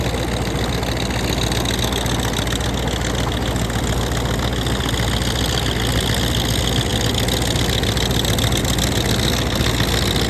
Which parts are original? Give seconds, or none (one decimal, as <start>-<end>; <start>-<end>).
0.0-10.3